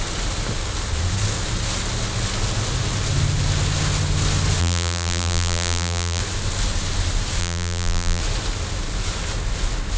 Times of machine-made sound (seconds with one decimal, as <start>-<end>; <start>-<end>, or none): 4.6-6.2; 7.4-8.2